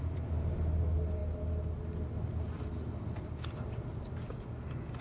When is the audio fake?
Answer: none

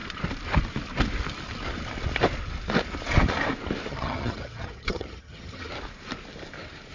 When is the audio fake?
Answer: 3.9-5.7 (vocoder, HiFi-GAN)

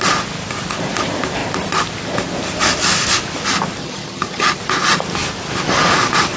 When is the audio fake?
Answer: 3.8-4.6 (vocoder, HiFi-GAN)

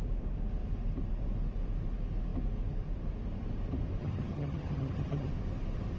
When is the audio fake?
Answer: 4.0-5.3 (vocoder, HiFi-GAN)

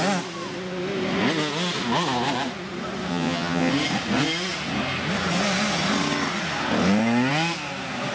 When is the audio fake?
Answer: 3.1-3.7 (vocoder, HiFi-GAN)